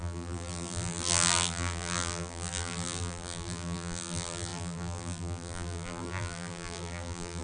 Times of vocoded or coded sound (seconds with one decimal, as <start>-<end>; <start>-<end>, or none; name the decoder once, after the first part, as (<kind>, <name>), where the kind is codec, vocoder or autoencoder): 0.0-7.4 (vocoder, BigVGAN v2)